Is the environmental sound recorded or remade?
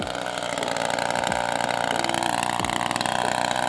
recorded